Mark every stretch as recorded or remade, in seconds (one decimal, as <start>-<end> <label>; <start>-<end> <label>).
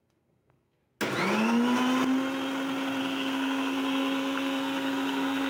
0.0-0.8 remade; 0.8-3.0 recorded; 3.0-5.5 remade